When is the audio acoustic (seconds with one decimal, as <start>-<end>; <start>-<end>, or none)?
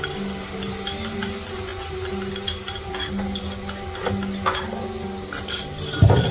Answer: 0.0-6.3